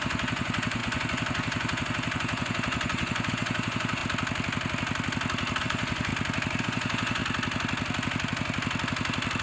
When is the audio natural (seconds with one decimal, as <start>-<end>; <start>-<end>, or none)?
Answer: 4.0-5.6; 6.1-6.6; 7.2-9.4